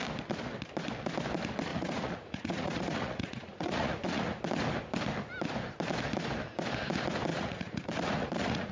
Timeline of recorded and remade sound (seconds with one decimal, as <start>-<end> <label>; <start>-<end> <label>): 0.0-1.7 recorded; 1.7-4.4 remade; 4.4-7.3 recorded; 7.3-8.7 remade